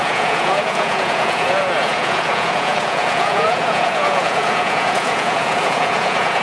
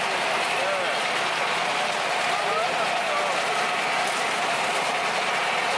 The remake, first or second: first